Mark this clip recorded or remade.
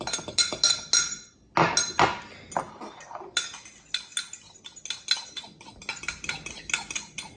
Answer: recorded